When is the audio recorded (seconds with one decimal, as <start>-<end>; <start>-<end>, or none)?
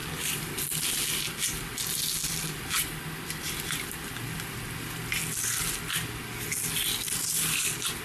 0.0-8.0